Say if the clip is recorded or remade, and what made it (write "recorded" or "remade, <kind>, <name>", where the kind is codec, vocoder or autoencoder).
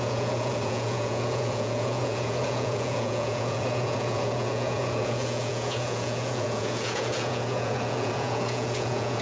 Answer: remade, vocoder, Vocos